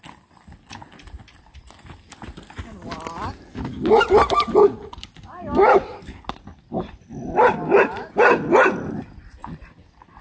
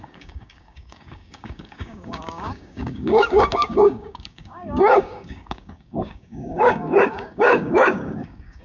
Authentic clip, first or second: first